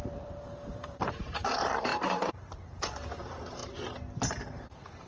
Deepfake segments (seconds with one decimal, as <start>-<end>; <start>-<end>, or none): 0.0-3.6; 4.3-5.1